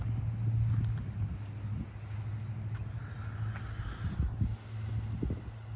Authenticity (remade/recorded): recorded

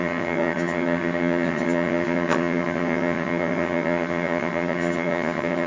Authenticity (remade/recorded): remade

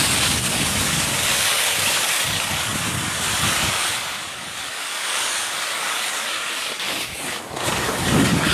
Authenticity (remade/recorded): remade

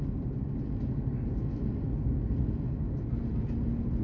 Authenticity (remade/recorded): recorded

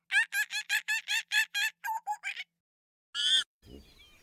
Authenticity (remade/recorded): recorded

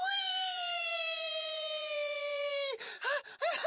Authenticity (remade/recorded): recorded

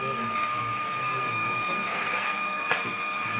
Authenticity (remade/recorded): remade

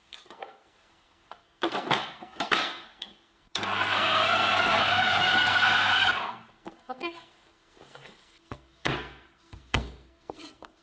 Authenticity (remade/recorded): remade